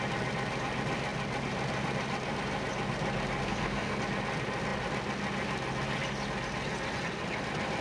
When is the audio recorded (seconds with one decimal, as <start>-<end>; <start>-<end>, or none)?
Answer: 0.0-3.4; 4.0-7.8